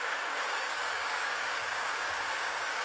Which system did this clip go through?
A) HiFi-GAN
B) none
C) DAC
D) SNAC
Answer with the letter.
C